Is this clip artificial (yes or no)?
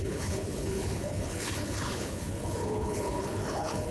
yes